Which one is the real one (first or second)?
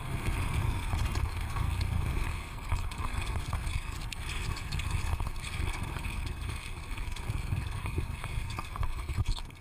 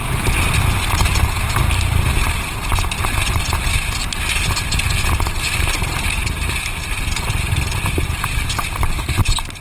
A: second